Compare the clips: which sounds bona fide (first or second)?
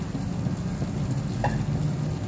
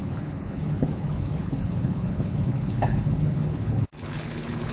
first